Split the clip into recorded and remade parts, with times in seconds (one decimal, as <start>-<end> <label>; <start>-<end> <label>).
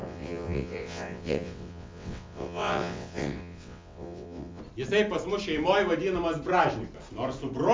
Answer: 0.0-4.6 remade; 4.6-7.7 recorded